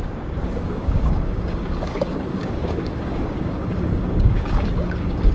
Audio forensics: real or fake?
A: fake